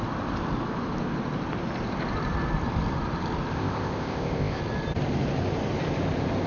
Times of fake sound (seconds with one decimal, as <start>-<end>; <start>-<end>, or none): 3.5-4.6